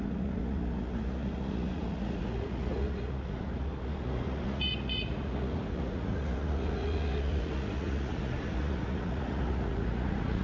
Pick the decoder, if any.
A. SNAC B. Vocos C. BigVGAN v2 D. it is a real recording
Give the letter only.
B